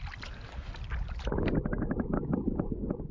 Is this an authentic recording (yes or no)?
yes